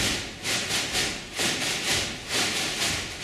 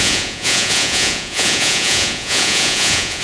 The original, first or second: first